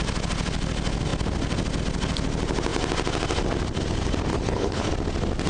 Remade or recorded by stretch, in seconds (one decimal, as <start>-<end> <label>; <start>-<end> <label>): 0.0-4.3 recorded; 4.3-4.9 remade; 4.9-5.5 recorded